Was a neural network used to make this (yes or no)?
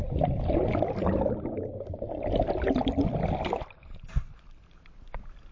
no